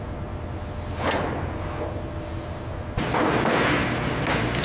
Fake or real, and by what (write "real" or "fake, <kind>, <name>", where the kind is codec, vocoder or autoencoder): real